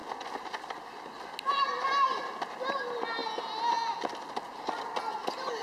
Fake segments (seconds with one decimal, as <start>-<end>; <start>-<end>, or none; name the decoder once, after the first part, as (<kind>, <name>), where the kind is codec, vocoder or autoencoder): none